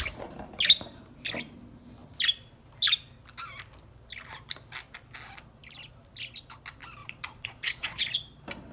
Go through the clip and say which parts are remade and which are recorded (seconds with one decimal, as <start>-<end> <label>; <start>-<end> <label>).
0.0-7.0 recorded; 7.0-8.0 remade; 8.0-8.7 recorded